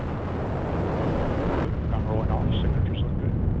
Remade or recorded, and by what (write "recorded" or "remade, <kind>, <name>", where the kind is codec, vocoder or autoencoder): recorded